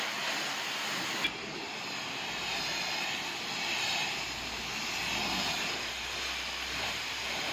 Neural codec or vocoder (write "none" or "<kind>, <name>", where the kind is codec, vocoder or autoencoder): none